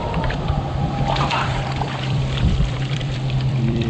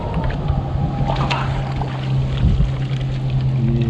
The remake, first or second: first